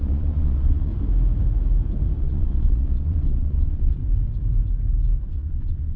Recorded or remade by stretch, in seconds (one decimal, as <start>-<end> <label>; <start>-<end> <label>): 0.0-0.9 remade; 0.9-2.2 recorded; 2.2-4.0 remade; 4.0-5.3 recorded; 5.3-6.0 remade